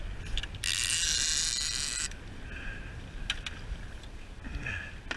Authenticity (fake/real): real